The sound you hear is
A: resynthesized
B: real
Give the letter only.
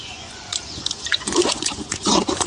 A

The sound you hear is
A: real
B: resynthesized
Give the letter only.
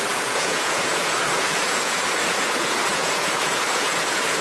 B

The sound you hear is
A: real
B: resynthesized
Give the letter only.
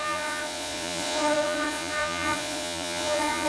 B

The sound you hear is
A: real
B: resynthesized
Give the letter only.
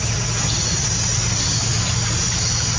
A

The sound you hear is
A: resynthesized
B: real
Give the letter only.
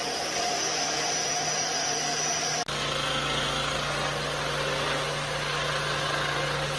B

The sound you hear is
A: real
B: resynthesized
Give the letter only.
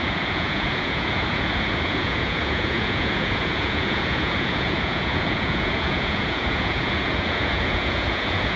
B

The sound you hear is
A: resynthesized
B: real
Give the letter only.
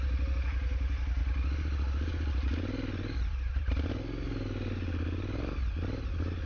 B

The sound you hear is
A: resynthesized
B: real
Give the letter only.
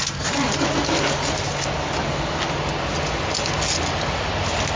B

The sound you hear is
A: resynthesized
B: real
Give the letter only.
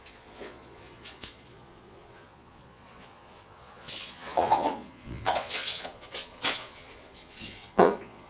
A